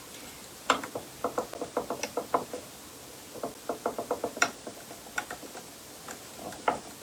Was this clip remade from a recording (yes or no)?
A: no